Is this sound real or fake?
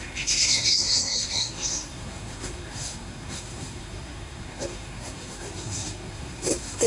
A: fake